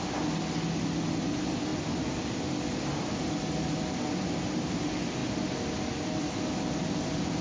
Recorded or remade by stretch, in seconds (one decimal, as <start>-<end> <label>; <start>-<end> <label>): 0.0-7.4 recorded